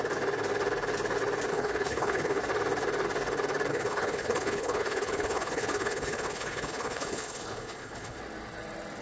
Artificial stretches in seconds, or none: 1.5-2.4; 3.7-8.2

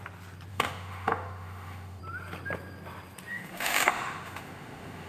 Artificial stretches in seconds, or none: 0.5-2.0; 3.3-5.1

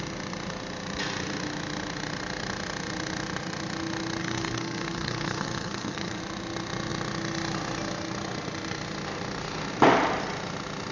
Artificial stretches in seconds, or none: 4.2-6.2

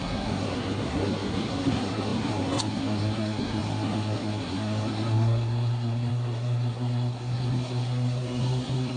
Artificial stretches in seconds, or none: 0.0-9.0

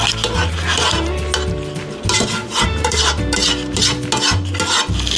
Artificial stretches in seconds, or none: 2.4-3.0

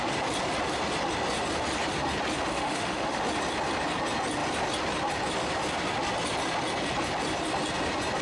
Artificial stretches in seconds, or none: 2.5-3.2

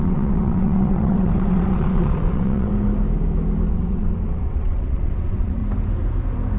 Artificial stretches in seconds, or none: 0.0-2.7; 3.7-5.6